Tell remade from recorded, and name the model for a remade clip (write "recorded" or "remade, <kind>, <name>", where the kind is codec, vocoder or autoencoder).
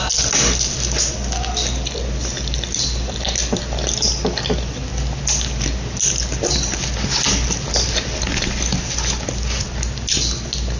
recorded